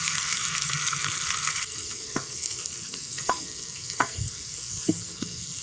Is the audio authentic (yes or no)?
no